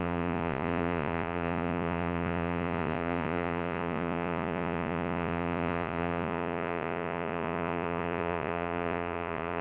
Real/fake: fake